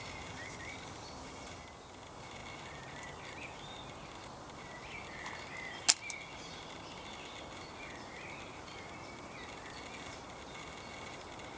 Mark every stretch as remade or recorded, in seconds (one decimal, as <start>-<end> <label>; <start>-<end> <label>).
0.0-11.6 recorded